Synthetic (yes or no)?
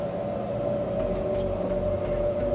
no